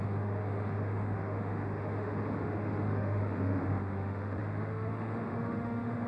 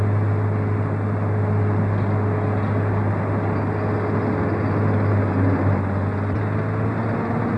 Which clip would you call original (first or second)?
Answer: second